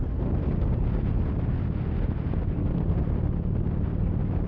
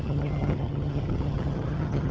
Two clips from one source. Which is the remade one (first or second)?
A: second